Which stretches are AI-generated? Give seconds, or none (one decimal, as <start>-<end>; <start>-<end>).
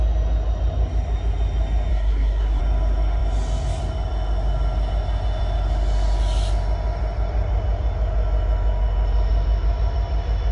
1.9-2.6